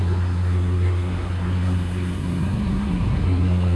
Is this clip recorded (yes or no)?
no